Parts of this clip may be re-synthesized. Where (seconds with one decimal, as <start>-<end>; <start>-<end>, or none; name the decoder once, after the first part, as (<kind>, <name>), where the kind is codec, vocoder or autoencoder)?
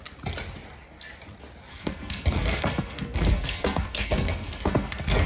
1.7-5.3 (codec, SNAC)